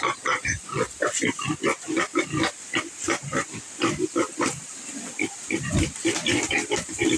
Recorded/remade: recorded